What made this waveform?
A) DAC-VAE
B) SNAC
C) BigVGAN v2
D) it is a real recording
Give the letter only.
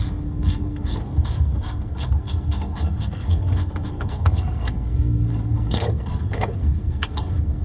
B